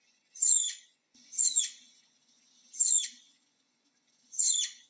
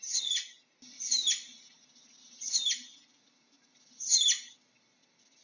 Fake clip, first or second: first